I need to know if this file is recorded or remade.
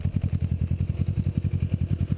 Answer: recorded